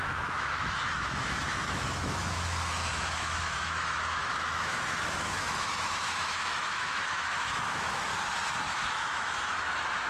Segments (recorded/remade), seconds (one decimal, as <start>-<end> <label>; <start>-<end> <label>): 0.0-8.1 remade; 8.1-8.7 recorded; 8.7-10.1 remade